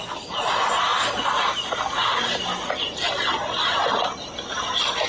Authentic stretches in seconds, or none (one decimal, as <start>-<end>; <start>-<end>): 0.0-5.1